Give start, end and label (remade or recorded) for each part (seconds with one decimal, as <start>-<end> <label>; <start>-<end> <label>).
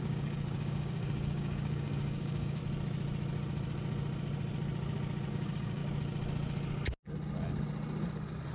0.0-2.6 remade; 2.6-5.3 recorded; 5.3-5.8 remade; 5.8-8.5 recorded